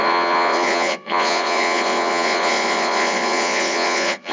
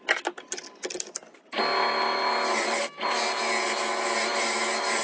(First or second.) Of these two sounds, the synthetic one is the first